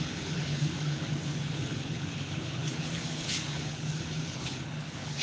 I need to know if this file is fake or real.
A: fake